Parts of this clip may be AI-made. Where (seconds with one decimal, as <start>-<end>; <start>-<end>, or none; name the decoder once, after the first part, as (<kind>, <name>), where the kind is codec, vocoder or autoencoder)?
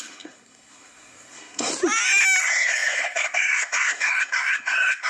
0.0-1.7 (codec, SNAC); 2.4-5.1